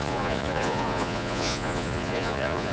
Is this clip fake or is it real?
fake